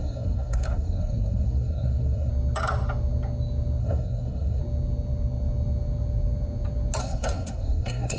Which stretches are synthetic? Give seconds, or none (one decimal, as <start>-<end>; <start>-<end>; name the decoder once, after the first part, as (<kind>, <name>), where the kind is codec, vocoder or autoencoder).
0.0-2.3 (codec, SNAC); 3.8-4.6; 7.0-8.2